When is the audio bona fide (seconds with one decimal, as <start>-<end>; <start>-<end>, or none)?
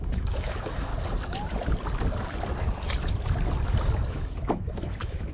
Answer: 0.9-4.1